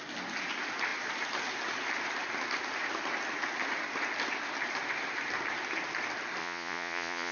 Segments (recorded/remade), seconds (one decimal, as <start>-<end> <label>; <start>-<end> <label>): 0.0-6.4 recorded; 6.4-7.3 remade